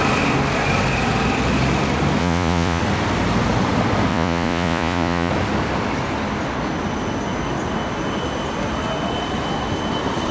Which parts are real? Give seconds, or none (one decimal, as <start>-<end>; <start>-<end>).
0.0-2.2; 2.8-4.1; 5.3-10.3